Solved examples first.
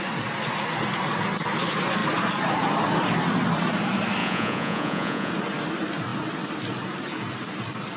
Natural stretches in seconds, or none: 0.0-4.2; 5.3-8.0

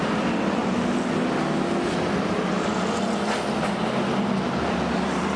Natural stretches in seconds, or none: 0.0-5.4

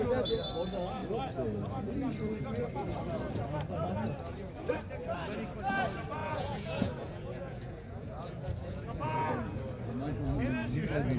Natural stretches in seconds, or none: 0.0-6.2; 9.6-11.2

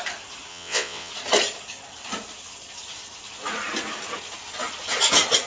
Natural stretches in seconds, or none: 0.0-0.5; 1.1-5.5

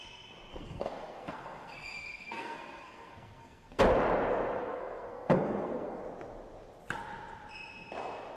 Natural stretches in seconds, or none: 0.0-0.5; 3.8-4.6; 6.0-8.4

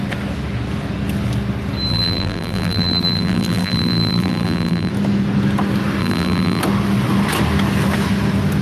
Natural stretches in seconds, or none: 0.0-1.9; 4.9-6.0; 6.6-8.6